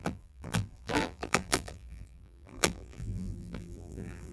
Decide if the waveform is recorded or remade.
remade